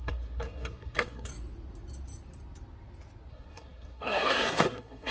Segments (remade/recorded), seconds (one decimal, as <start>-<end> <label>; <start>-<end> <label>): 0.0-1.3 remade; 1.3-3.3 recorded; 3.3-5.1 remade